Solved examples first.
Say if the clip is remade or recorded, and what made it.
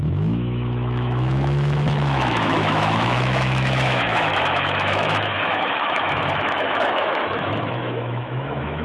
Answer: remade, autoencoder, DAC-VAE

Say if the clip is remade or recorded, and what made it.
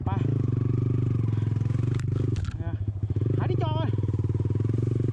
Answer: recorded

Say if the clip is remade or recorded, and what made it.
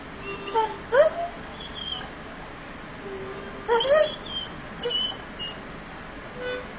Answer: recorded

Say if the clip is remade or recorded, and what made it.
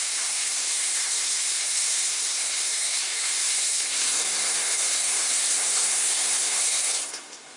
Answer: remade, codec, SNAC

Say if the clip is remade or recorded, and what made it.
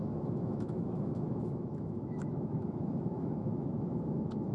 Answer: remade, autoencoder, DAC-VAE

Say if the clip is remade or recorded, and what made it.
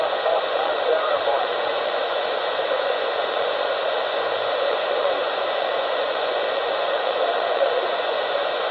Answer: remade, vocoder, Vocos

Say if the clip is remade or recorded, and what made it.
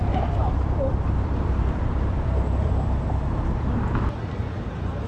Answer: remade, vocoder, BigVGAN v2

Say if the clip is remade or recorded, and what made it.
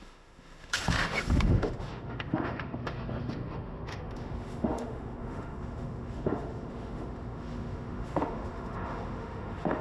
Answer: remade, autoencoder, DAC-VAE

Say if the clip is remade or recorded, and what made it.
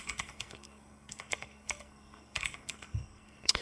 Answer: remade, codec, SNAC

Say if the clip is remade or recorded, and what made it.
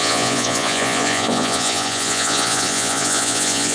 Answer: remade, vocoder, Vocos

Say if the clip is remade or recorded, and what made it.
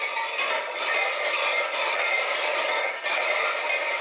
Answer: recorded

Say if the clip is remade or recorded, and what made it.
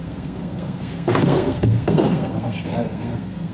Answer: remade, codec, SNAC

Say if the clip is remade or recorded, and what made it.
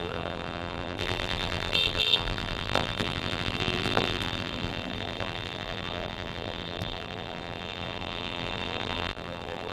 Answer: remade, vocoder, BigVGAN v2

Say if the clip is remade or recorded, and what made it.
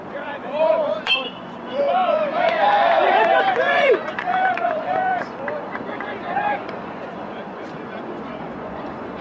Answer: remade, vocoder, Vocos